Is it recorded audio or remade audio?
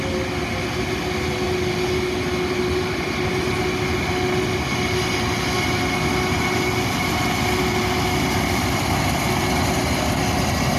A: recorded